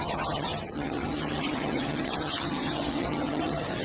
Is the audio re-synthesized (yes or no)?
yes